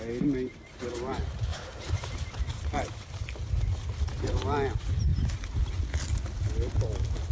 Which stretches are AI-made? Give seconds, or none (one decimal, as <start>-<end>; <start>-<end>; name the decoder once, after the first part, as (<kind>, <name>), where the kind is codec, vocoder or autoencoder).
1.5-3.2 (vocoder, BigVGAN v2); 5.1-5.6